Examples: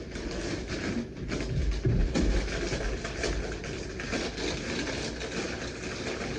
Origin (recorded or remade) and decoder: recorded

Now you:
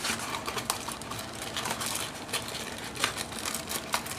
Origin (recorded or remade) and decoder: recorded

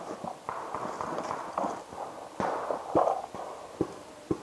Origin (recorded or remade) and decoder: recorded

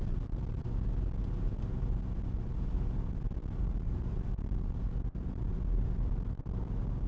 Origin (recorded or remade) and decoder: remade, vocoder, BigVGAN v2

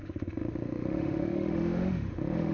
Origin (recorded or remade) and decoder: remade, autoencoder, DAC-VAE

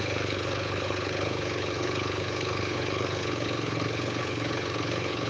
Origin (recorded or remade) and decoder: remade, codec, HILCodec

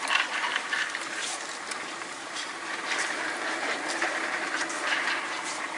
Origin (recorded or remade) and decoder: remade, vocoder, BigVGAN v2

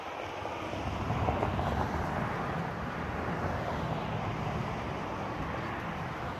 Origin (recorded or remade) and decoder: recorded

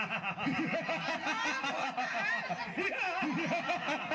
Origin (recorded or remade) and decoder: recorded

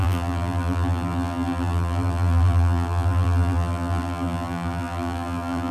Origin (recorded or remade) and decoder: remade, vocoder, BigVGAN v2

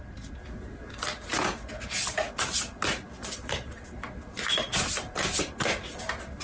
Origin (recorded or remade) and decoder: recorded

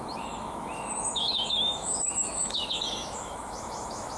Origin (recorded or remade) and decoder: remade, autoencoder, DAC-VAE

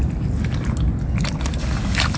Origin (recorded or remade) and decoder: recorded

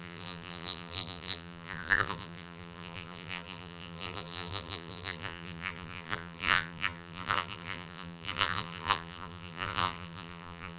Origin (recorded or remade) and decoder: remade, vocoder, BigVGAN v2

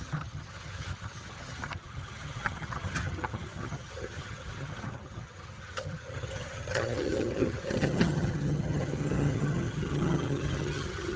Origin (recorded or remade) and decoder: remade, vocoder, HiFi-GAN